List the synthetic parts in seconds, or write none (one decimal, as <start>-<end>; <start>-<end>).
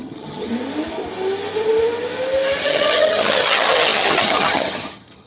0.0-0.5; 2.6-5.3